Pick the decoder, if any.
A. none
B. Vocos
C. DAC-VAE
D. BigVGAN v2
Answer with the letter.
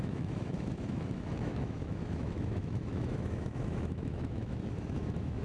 C